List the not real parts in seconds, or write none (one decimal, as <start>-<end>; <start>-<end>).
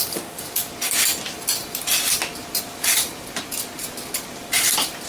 0.0-0.7; 2.6-3.0